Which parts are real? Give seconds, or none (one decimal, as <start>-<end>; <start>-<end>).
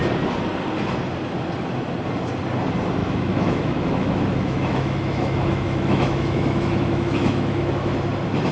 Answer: 0.0-3.0; 7.9-8.5